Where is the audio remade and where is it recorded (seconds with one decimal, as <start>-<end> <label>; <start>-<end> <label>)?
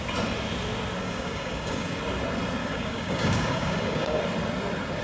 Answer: 0.0-1.0 recorded; 1.0-2.0 remade; 2.0-2.6 recorded; 2.6-4.2 remade; 4.2-5.0 recorded